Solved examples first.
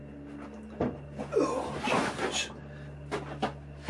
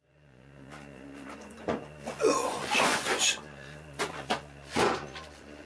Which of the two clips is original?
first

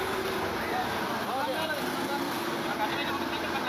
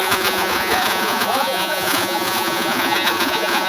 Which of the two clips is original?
first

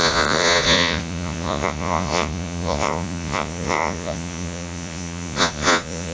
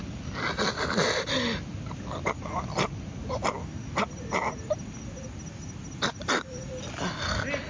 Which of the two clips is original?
second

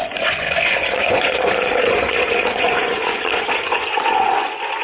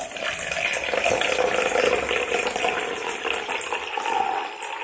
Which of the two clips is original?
second